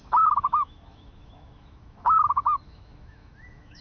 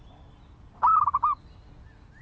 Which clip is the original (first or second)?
second